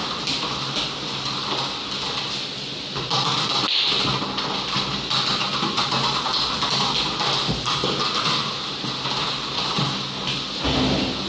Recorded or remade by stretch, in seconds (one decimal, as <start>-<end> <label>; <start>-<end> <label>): 0.0-11.3 recorded